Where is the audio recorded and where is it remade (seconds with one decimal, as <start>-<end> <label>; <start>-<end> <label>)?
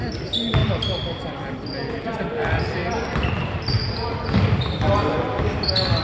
0.0-6.0 remade